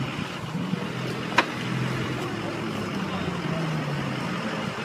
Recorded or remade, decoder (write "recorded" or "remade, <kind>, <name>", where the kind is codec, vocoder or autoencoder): recorded